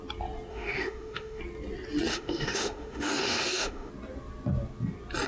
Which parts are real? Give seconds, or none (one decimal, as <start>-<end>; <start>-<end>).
0.0-0.5; 1.4-2.1; 3.9-5.3

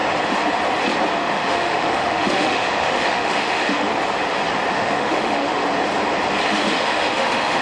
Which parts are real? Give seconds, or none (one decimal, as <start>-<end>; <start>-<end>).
0.0-1.2; 3.9-4.7; 5.6-6.5

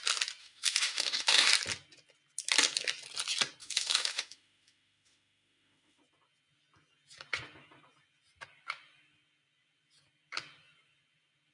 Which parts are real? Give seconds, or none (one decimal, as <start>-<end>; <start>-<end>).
0.0-0.4; 1.5-3.6; 6.0-11.5

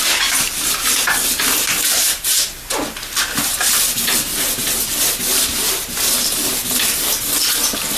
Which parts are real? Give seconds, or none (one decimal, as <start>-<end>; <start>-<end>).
0.0-8.0

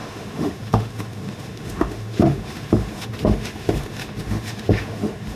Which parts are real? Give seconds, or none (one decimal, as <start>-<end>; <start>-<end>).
none

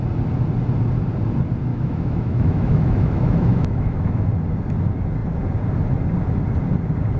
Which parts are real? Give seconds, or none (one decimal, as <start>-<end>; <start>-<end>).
0.0-1.7; 4.2-7.2

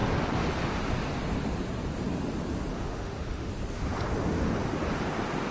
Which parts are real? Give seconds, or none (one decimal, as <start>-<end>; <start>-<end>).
0.0-2.7; 3.5-5.5

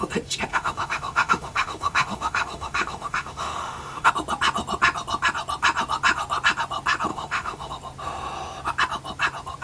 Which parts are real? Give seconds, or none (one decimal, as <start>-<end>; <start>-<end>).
0.0-0.5; 4.1-7.1; 7.7-9.6